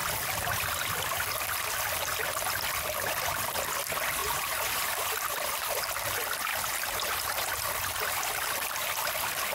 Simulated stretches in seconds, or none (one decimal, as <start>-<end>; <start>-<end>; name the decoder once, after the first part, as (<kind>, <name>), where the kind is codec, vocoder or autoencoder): 4.2-5.5 (vocoder, BigVGAN v2)